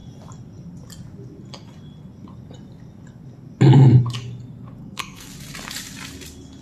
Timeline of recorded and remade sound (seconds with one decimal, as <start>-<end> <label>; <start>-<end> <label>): 0.0-4.8 recorded; 4.8-5.3 remade; 5.3-6.6 recorded